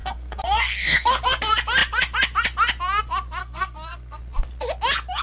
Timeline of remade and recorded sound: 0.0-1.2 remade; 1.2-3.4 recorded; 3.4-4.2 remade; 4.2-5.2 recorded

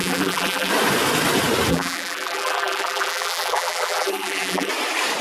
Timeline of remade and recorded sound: 0.0-0.7 remade; 0.7-1.7 recorded; 1.7-4.7 remade; 4.7-5.2 recorded

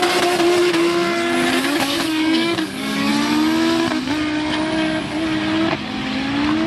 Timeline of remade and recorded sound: 0.0-1.6 recorded; 1.6-3.1 remade; 3.1-6.7 recorded

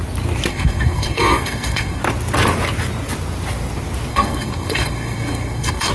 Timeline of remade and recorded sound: 0.0-0.5 recorded; 0.5-2.0 remade; 2.0-4.1 recorded; 4.1-5.9 remade